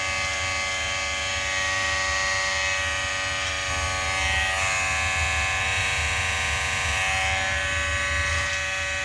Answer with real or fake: real